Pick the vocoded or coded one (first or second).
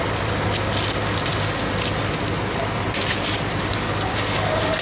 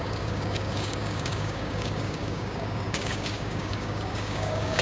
second